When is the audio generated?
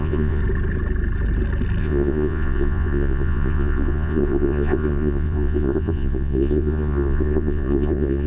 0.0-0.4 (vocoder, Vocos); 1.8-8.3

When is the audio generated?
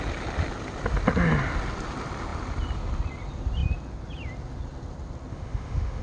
5.3-6.0 (autoencoder, DAC-VAE)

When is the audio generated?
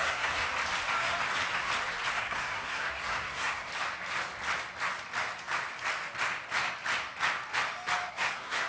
0.0-0.4 (codec, SNAC); 2.1-3.7; 8.1-8.7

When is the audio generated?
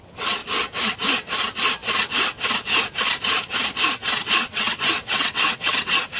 0.0-0.4 (vocoder, WaveNeXt); 4.1-6.2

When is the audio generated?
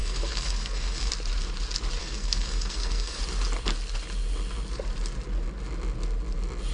0.0-1.1 (codec, SNAC); 2.0-3.2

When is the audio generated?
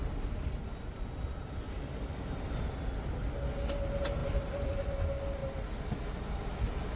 4.2-5.0 (vocoder, BigVGAN v2)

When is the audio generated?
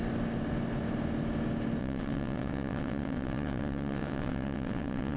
1.8-5.2 (vocoder, WaveNeXt)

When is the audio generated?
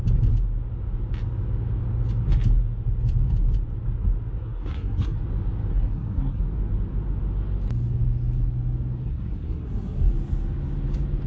4.4-5.2 (codec, SNAC); 5.7-6.4; 9.0-10.1